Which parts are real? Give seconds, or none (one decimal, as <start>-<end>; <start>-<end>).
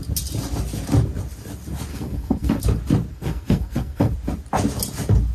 0.0-1.9; 2.6-3.1; 4.1-5.3